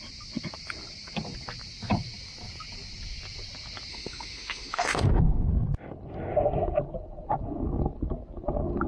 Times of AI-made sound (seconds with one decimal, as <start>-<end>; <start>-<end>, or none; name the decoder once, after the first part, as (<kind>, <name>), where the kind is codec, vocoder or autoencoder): 3.9-5.5 (autoencoder, DAC-VAE)